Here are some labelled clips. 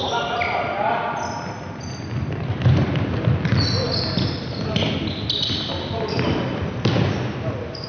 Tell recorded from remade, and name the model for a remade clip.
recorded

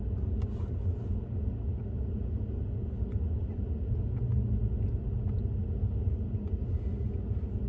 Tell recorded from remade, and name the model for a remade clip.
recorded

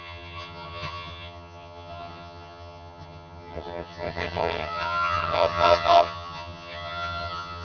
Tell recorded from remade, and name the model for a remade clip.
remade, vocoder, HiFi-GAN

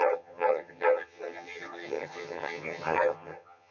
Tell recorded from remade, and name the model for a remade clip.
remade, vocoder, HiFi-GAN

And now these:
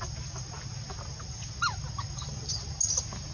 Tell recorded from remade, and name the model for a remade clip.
recorded